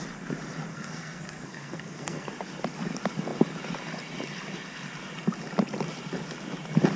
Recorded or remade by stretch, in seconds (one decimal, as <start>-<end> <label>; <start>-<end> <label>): 0.0-0.7 recorded; 0.7-2.3 remade; 2.3-7.0 recorded